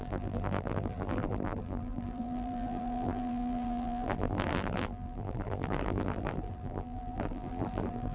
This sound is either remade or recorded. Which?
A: remade